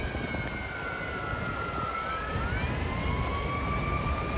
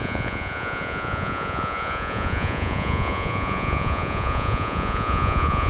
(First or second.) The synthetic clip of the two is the second